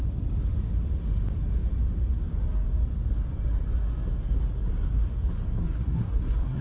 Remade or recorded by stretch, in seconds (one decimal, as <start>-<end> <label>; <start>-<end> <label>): 0.0-5.6 recorded; 5.6-6.6 remade